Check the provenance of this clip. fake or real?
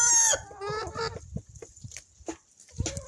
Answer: real